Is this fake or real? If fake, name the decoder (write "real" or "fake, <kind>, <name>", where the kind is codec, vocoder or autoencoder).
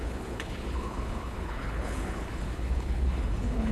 fake, codec, HILCodec